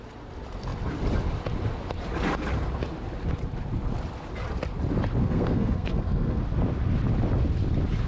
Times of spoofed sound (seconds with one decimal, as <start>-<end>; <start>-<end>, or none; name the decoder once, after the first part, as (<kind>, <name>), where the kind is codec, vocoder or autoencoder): 5.2-6.4 (codec, SNAC)